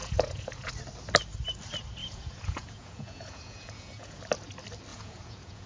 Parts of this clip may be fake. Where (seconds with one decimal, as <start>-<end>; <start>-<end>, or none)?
0.0-0.7; 2.0-4.2; 4.9-5.7